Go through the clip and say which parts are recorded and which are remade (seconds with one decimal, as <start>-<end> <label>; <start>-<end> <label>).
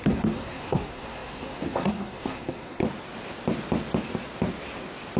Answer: 0.0-2.8 remade; 2.8-5.2 recorded